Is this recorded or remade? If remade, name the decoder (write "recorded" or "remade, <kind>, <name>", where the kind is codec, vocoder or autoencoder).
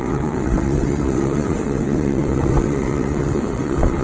remade, vocoder, WaveNeXt